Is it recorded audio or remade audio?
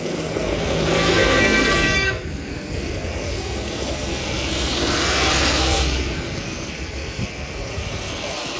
remade